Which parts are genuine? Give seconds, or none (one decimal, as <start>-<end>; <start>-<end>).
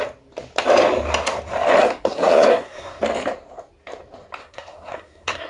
0.0-1.8; 3.0-4.4